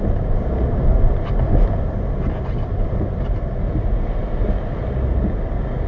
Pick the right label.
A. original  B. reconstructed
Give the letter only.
A